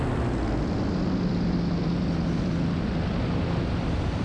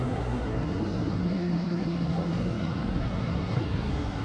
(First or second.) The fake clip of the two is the second